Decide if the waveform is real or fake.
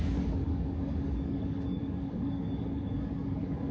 fake